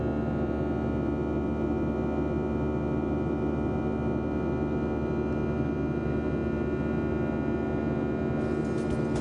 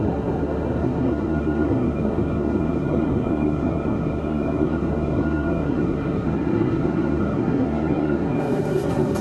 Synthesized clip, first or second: second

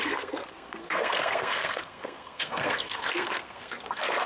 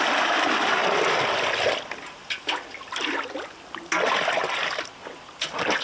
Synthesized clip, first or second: first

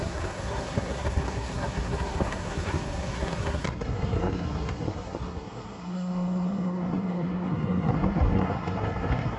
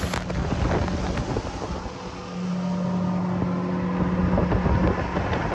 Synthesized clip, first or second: first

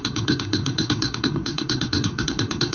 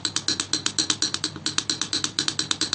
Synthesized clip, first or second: first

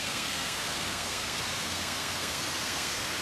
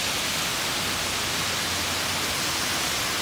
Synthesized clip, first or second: first